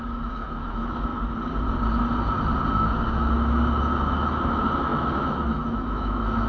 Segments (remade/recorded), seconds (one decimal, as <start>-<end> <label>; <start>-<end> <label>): 0.0-1.1 remade; 1.1-2.7 recorded; 2.7-6.5 remade